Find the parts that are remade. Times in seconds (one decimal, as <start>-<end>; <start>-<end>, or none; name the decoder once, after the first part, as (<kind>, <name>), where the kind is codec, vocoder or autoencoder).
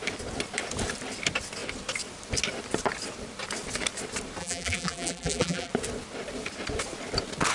4.4-5.7 (vocoder, BigVGAN v2)